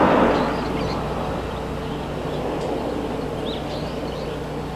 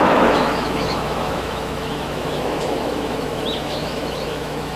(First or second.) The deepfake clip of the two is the second